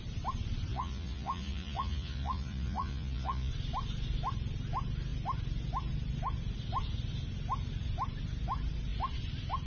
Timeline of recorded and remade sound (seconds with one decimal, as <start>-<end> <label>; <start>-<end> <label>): 0.0-0.7 recorded; 0.7-3.5 remade; 3.5-9.7 recorded